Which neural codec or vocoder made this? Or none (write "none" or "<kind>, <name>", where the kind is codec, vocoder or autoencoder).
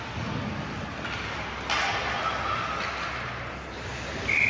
none